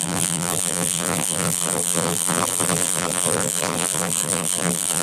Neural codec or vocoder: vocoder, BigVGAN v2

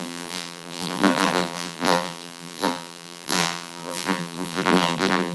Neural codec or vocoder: vocoder, BigVGAN v2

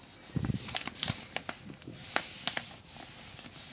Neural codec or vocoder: none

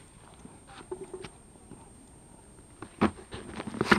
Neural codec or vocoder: none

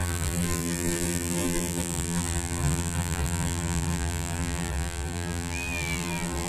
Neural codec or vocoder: vocoder, BigVGAN v2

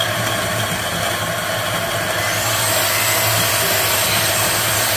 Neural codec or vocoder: none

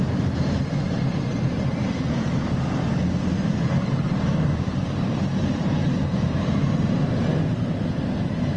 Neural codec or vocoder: vocoder, BigVGAN v2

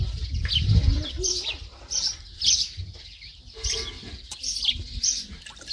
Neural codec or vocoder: vocoder, BigVGAN v2